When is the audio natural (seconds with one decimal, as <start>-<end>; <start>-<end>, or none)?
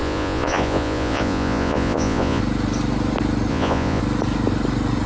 2.4-3.5; 4.0-5.1